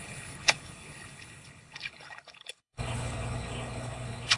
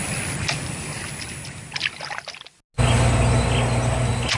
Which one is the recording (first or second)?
second